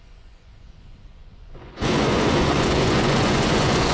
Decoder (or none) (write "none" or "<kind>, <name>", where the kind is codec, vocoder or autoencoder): vocoder, Vocos